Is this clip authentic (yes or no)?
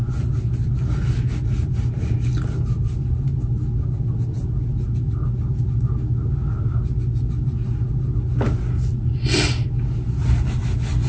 yes